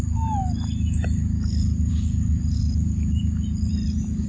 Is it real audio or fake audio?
real